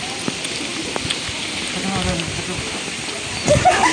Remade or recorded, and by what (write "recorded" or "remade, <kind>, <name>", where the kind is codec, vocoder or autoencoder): recorded